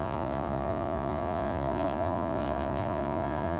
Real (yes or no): no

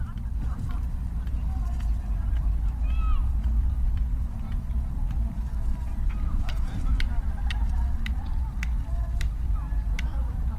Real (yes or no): no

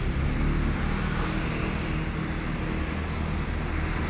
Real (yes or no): yes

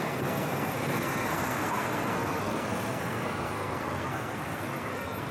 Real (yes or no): no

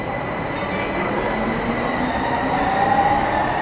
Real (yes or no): yes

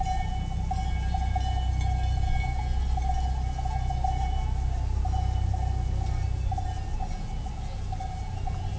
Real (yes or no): yes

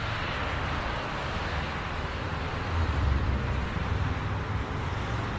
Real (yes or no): no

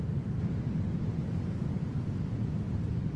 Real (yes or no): yes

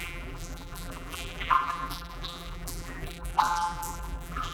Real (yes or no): no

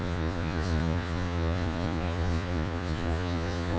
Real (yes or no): no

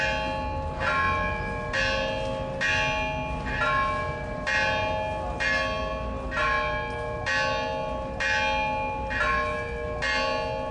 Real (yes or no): yes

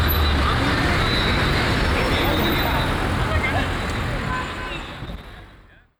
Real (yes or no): yes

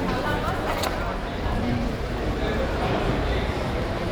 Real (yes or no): no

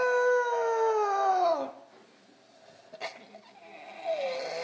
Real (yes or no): yes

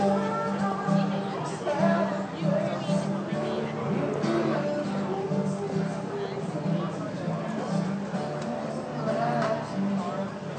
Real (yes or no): yes